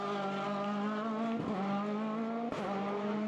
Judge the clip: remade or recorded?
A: recorded